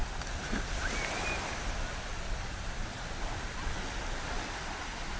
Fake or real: real